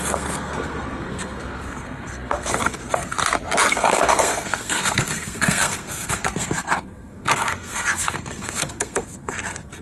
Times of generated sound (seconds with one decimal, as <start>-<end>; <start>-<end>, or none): 0.0-3.2; 3.7-9.8